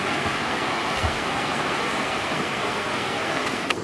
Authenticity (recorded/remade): remade